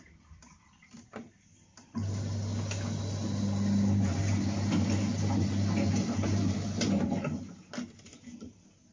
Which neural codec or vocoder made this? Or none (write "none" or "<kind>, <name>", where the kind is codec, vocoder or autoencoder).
none